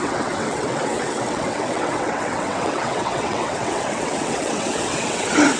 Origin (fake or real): fake